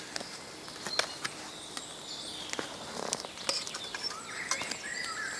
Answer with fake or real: real